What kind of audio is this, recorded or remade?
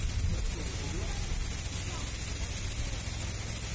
recorded